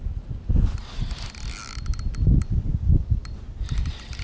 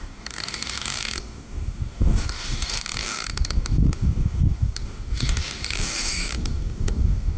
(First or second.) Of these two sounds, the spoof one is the second